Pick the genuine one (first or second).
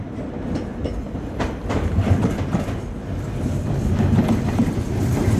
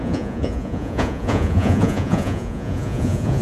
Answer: first